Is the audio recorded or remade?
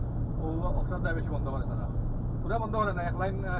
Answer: recorded